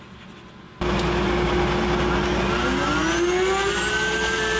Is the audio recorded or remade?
recorded